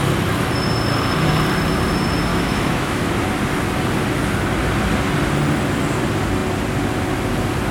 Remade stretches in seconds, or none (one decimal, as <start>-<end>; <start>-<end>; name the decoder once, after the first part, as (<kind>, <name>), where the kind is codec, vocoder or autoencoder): 2.3-3.1 (autoencoder, DAC-VAE)